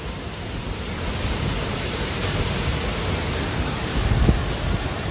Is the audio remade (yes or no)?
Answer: yes